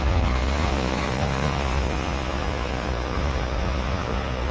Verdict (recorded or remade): remade